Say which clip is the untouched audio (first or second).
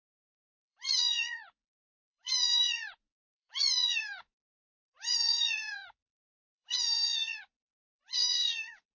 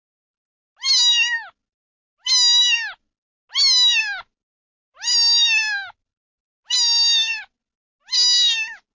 second